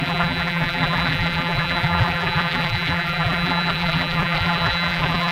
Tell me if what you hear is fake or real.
fake